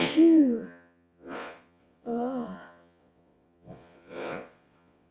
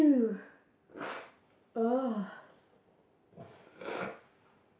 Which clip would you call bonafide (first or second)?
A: second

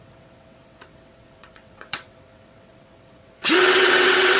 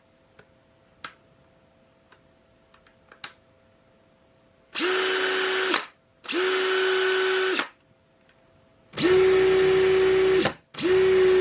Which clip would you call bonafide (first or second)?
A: second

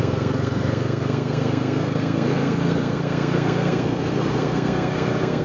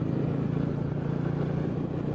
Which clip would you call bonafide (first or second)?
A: second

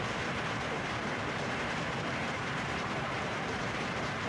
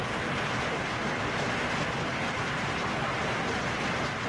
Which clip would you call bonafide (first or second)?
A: second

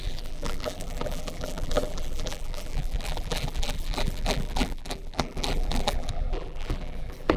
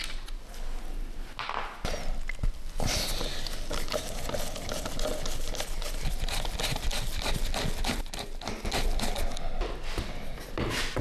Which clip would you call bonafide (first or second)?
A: second